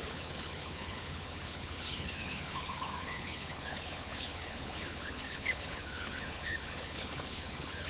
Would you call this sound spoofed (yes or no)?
yes